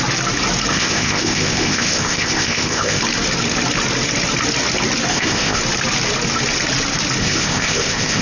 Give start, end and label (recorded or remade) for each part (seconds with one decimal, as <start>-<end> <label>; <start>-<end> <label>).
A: 0.0-0.7 recorded; 0.7-3.0 remade; 3.0-5.1 recorded; 5.1-5.6 remade; 5.6-7.2 recorded; 7.2-8.2 remade